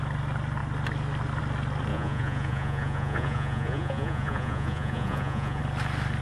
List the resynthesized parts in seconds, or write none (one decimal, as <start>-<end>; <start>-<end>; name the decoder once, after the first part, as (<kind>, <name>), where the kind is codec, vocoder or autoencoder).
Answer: 1.9-5.6 (vocoder, Vocos)